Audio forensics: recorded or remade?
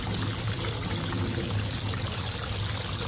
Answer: recorded